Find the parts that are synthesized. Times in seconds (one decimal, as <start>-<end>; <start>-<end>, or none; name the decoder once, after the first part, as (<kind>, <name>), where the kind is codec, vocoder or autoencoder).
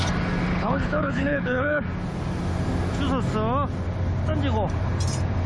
0.5-1.8 (codec, HILCodec)